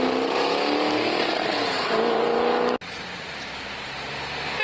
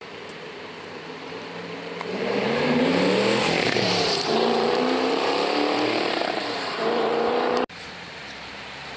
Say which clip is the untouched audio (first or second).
first